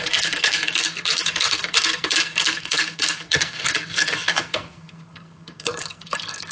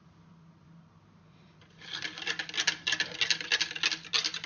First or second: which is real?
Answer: second